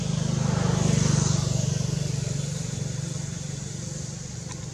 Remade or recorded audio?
recorded